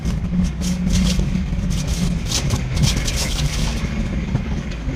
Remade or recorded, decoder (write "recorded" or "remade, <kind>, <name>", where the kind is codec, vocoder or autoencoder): remade, codec, DAC